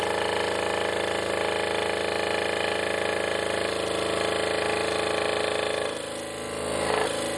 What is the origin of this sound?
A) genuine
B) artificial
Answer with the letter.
A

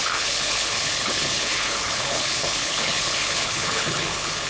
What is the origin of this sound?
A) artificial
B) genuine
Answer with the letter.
A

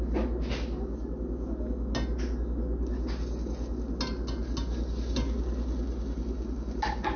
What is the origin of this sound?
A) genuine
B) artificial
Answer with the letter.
A